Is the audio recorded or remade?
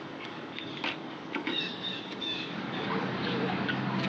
remade